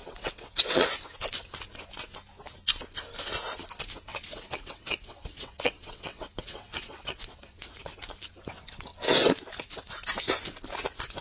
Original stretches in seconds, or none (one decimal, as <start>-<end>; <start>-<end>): 0.9-4.1; 7.7-11.2